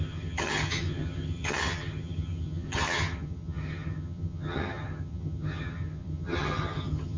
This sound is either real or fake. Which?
fake